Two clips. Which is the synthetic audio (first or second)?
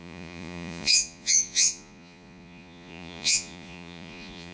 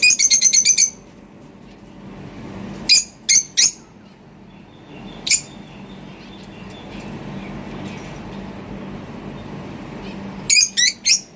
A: first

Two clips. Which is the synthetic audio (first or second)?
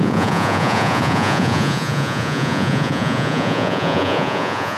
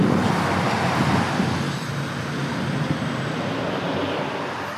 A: first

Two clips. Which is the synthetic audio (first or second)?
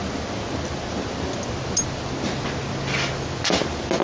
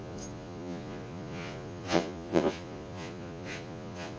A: second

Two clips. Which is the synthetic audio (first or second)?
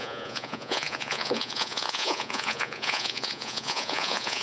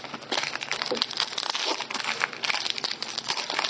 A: first